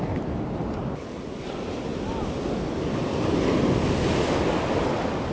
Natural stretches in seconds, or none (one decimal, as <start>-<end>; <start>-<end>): 0.0-5.3